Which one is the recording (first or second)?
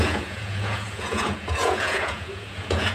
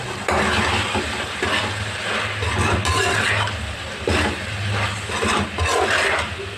second